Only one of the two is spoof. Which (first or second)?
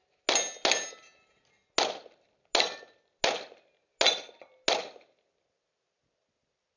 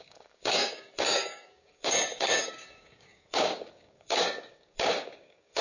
second